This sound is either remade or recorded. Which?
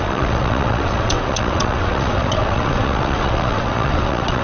remade